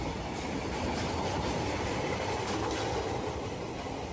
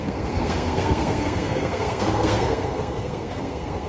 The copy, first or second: second